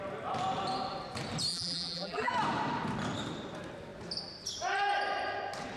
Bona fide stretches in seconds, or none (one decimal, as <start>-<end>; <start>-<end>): 0.0-1.5; 2.3-5.8